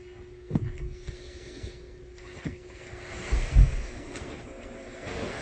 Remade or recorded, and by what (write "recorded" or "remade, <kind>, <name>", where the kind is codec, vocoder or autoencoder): remade, codec, SNAC